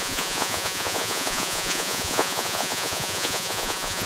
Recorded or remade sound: remade